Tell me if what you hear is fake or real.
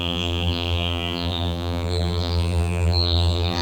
fake